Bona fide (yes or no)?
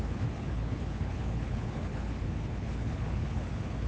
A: no